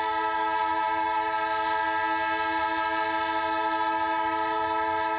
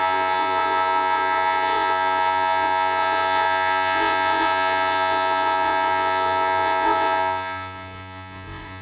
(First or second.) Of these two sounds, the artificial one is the second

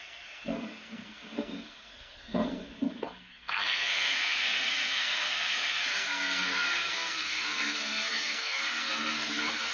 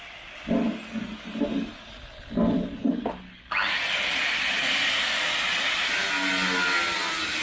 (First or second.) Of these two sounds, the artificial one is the first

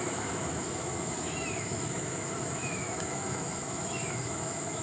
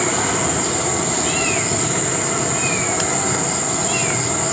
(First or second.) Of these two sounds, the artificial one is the first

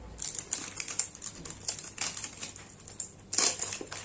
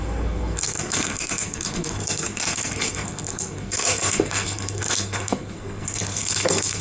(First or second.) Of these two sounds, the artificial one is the second